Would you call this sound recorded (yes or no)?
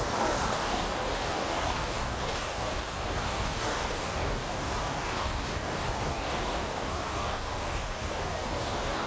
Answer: no